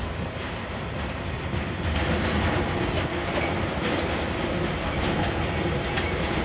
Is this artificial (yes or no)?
no